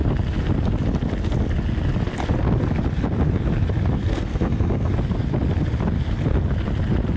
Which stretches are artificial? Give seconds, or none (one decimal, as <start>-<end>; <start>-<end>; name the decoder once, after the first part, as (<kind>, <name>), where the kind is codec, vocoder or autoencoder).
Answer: 4.0-4.9 (codec, SNAC)